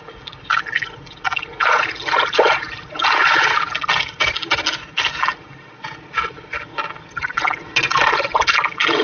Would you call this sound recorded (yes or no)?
yes